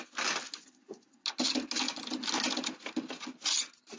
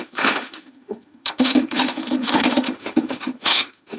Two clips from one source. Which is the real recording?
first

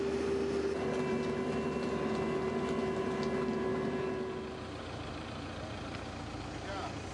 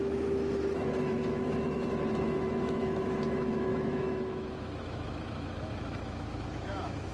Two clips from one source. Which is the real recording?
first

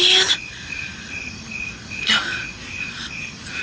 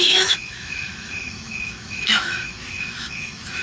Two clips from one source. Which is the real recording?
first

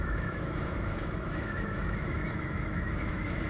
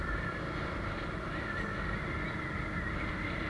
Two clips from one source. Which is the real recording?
second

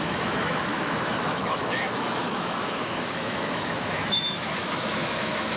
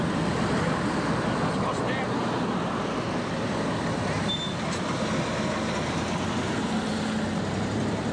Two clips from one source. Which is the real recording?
second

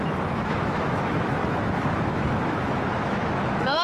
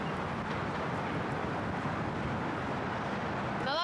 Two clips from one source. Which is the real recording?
second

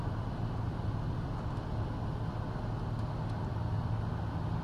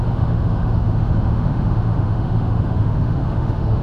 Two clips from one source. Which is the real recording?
first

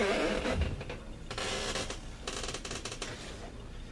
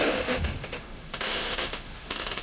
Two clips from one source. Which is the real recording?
first